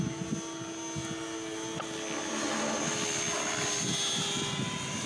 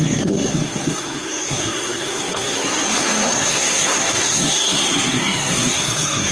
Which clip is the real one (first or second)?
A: first